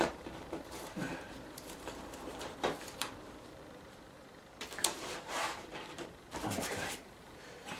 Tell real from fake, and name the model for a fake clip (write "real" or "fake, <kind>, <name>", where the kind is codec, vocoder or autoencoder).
fake, vocoder, BigVGAN v2